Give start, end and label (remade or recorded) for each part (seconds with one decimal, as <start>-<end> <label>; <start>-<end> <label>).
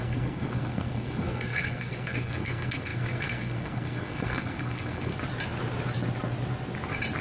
0.0-5.1 remade; 5.1-7.2 recorded